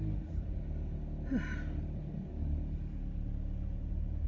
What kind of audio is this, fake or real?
real